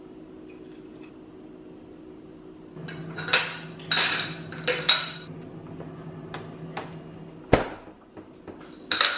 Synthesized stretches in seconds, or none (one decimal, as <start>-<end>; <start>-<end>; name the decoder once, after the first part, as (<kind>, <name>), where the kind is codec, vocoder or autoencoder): none